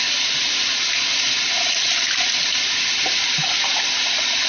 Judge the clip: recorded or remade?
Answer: recorded